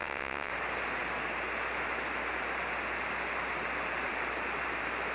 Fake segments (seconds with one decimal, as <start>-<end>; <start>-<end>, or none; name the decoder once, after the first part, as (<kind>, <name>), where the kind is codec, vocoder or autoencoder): 0.0-0.5 (vocoder, WaveNeXt)